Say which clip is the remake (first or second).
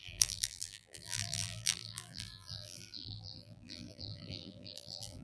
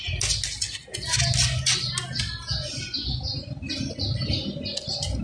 first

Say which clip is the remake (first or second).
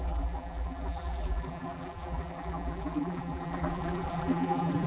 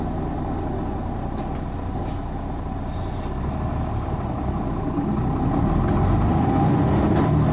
first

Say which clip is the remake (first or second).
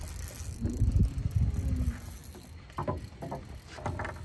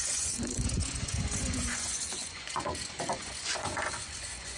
second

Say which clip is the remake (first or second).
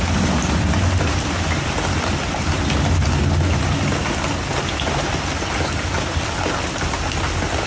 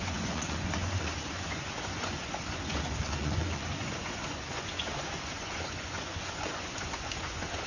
second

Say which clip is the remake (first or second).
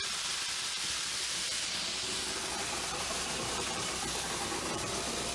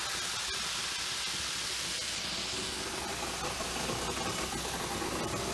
first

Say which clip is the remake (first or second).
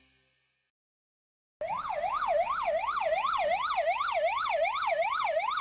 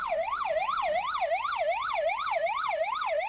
second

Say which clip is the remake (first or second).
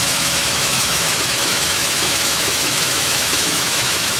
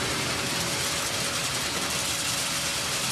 first